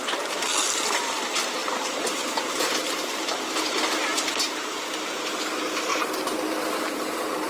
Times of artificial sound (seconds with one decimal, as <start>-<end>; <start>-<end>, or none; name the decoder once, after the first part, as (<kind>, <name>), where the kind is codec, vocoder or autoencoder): 1.6-3.6 (vocoder, BigVGAN v2)